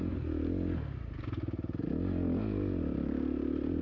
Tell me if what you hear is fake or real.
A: real